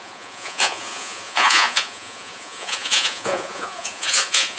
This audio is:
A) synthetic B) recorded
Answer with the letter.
A